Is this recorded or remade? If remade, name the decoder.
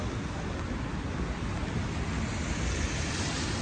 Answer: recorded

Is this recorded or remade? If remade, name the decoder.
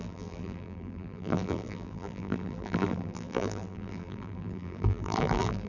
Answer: remade, vocoder, BigVGAN v2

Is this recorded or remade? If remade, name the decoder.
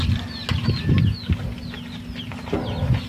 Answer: recorded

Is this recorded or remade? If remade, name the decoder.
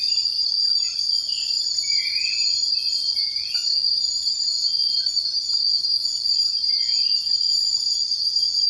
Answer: recorded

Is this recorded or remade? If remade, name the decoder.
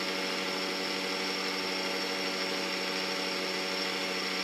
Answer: recorded